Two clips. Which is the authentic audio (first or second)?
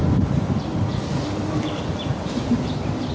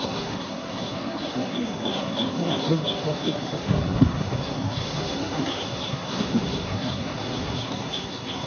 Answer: first